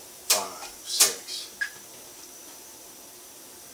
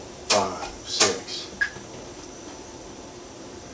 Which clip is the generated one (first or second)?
second